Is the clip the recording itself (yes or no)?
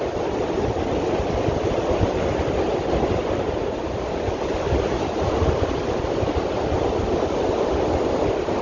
yes